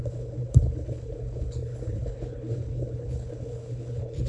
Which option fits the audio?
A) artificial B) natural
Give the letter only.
A